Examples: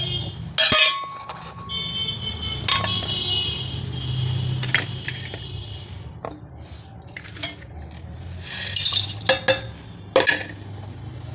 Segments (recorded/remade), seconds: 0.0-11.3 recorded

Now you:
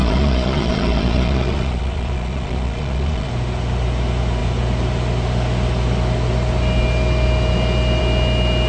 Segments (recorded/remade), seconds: 0.0-3.3 remade; 3.3-8.7 recorded